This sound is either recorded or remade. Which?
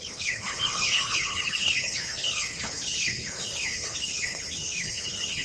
remade